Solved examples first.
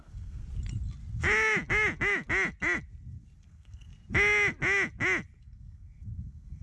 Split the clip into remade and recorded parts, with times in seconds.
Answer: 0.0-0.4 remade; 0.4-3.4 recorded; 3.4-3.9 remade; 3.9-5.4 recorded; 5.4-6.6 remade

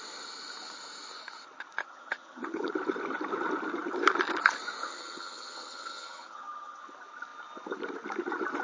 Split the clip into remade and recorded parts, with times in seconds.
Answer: 0.0-1.8 recorded; 1.8-2.7 remade; 2.7-4.8 recorded; 4.8-6.8 remade; 6.8-8.6 recorded

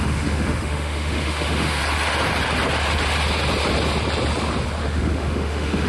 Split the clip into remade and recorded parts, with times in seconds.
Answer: 0.0-1.8 remade; 1.8-4.8 recorded; 4.8-5.9 remade

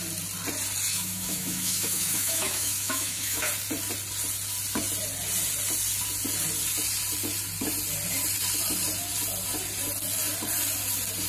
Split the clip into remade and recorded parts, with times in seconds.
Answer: 0.0-0.9 recorded; 0.9-3.5 remade; 3.5-11.3 recorded

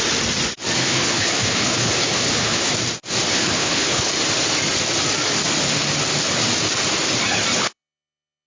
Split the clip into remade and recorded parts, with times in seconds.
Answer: 0.0-0.8 recorded; 0.8-2.7 remade; 2.7-3.3 recorded; 3.3-4.1 remade; 4.1-7.5 recorded; 7.5-8.5 remade